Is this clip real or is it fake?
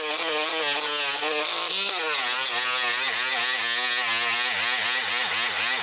real